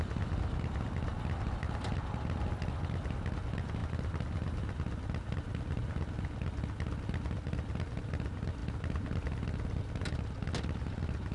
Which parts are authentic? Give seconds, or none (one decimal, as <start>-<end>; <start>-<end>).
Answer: 0.0-11.3